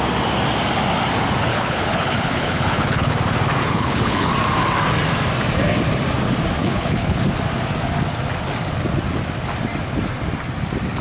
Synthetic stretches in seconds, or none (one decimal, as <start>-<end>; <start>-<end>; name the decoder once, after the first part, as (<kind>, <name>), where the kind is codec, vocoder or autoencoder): 1.5-3.1 (codec, HILCodec); 3.6-4.3; 6.6-7.2